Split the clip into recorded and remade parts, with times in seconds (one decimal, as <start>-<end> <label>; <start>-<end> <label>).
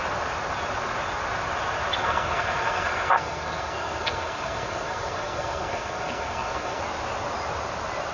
0.0-2.0 recorded; 2.0-6.8 remade; 6.8-8.1 recorded